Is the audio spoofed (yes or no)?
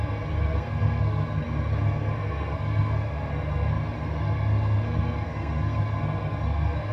yes